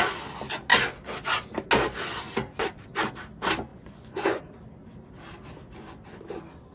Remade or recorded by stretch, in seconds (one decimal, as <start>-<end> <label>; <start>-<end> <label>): 0.0-3.7 recorded; 3.7-4.4 remade; 4.4-6.7 recorded